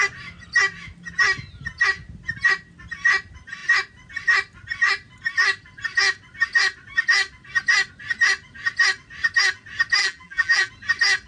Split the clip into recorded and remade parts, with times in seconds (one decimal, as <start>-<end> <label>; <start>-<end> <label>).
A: 0.0-10.0 recorded; 10.0-10.7 remade; 10.7-11.3 recorded